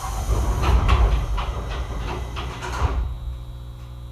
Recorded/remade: recorded